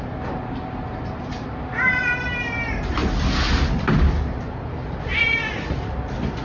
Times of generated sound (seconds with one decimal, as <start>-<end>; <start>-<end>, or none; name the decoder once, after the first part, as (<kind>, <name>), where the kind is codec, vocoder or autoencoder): none